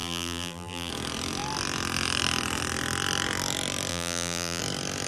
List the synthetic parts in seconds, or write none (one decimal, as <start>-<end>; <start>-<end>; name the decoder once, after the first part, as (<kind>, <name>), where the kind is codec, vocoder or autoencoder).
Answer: 0.0-0.9 (vocoder, BigVGAN v2); 3.9-4.6